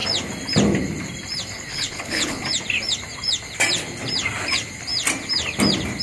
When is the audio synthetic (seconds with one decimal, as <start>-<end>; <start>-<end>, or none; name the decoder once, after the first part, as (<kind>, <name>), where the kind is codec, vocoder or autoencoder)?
1.7-2.4 (codec, HILCodec)